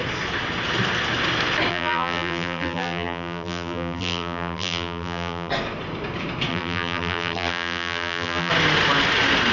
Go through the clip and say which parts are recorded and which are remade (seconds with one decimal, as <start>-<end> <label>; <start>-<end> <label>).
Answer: 0.0-1.7 recorded; 1.7-5.5 remade; 5.5-6.5 recorded; 6.5-8.5 remade; 8.5-9.5 recorded